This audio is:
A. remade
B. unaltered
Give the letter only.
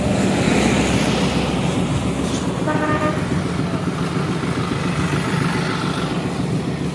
B